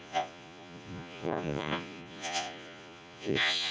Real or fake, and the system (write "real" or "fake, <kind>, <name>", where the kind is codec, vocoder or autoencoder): fake, vocoder, Vocos